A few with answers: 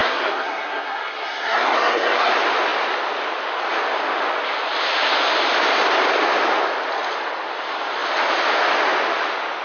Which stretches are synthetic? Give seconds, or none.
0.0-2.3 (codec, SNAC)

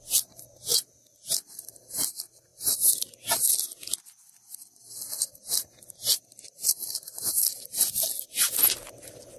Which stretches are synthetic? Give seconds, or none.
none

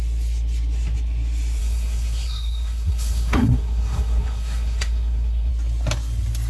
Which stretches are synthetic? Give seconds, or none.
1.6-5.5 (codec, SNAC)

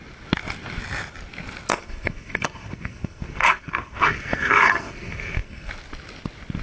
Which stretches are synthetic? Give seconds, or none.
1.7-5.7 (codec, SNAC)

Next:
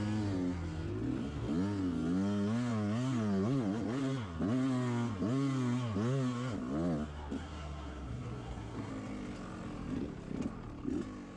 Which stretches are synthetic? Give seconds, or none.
7.4-8.9 (codec, SNAC)

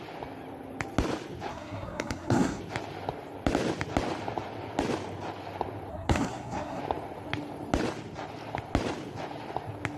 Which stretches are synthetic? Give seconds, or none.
1.5-2.6 (codec, SNAC); 5.9-6.8